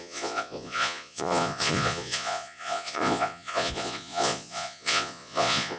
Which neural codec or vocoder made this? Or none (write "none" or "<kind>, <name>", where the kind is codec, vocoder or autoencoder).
vocoder, Vocos